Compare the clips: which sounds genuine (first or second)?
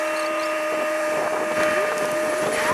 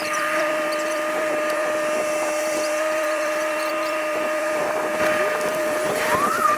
first